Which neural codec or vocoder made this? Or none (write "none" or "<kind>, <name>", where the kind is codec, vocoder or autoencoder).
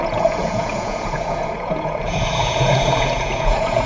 vocoder, Vocos